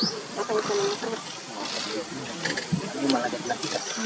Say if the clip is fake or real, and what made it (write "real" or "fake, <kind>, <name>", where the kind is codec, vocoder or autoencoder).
real